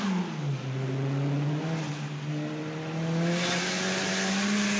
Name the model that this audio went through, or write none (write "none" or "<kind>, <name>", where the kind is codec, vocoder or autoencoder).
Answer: none